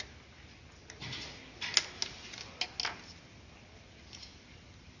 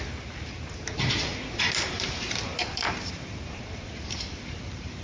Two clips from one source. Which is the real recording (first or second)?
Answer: first